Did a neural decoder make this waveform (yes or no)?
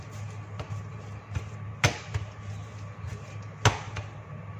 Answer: no